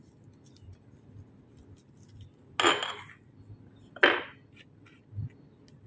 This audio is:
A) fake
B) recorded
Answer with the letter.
B